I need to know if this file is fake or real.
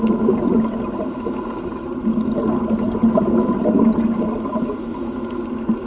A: real